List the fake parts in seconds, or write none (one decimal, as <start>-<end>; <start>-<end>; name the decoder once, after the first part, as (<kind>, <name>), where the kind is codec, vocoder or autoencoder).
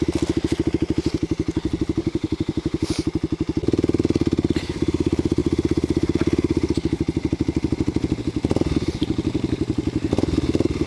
2.0-2.9 (autoencoder, DAC-VAE)